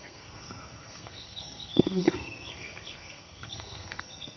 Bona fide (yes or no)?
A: no